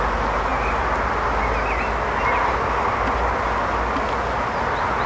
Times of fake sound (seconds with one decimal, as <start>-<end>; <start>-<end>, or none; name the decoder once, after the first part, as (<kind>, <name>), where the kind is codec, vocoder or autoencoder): none